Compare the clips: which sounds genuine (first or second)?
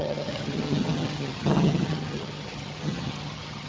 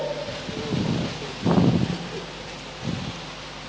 second